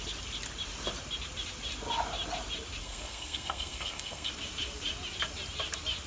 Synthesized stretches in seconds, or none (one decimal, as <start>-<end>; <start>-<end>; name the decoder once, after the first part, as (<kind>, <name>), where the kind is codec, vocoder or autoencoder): 2.8-4.3 (codec, SNAC)